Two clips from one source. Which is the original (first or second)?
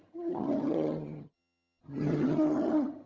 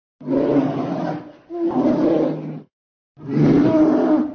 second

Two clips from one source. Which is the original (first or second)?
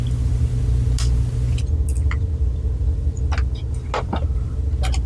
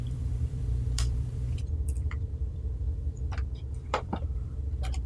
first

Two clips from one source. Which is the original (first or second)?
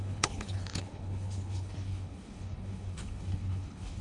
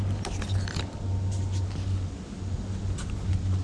second